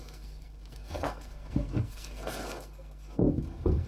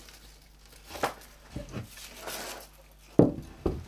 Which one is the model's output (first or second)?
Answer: first